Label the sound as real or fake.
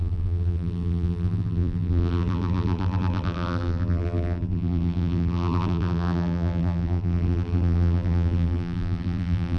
fake